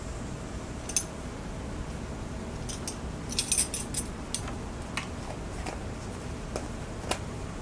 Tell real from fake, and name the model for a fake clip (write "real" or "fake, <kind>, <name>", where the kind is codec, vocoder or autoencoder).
real